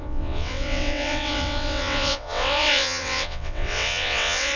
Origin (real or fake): fake